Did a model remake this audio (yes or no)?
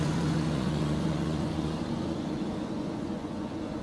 yes